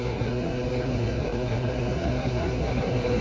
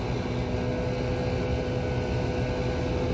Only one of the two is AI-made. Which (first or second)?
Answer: first